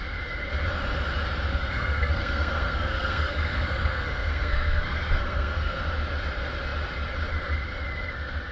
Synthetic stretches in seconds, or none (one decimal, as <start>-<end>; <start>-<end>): 1.5-5.8